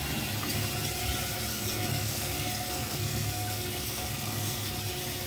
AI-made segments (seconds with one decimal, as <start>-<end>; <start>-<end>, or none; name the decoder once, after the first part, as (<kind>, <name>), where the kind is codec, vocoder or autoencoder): 1.5-4.7 (codec, SNAC)